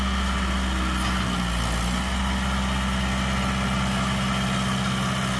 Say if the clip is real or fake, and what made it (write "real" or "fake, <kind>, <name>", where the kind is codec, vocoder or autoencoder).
real